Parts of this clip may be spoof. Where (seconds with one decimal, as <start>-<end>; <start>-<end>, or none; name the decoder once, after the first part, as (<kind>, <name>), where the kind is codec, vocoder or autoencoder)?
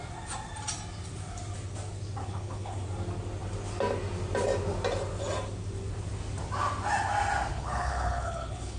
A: 2.2-2.8 (codec, HILCodec); 7.5-8.8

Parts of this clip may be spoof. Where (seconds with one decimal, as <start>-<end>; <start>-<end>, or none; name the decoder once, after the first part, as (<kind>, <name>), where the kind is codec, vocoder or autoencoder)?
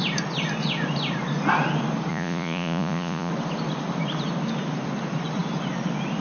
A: 2.1-3.3 (vocoder, Vocos)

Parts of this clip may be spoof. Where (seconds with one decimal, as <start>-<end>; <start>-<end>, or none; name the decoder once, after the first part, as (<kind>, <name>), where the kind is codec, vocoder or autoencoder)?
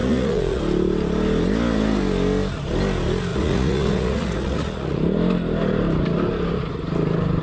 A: 0.0-0.6 (vocoder, Vocos); 3.3-5.0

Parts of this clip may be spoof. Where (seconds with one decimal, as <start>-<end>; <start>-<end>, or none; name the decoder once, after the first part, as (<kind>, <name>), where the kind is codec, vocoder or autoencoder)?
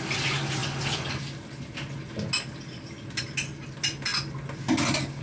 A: none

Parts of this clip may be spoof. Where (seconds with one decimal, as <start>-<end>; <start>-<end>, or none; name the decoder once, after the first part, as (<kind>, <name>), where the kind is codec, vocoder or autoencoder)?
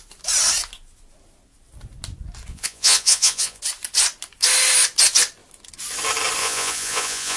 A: 2.5-3.6 (vocoder, Vocos); 6.4-7.4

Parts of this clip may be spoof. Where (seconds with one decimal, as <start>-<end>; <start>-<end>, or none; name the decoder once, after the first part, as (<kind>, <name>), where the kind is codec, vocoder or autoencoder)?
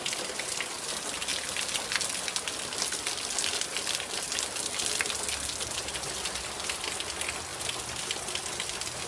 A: none